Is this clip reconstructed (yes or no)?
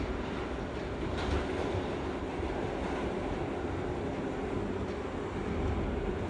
no